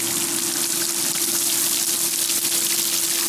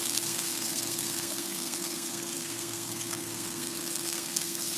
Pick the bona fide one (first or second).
first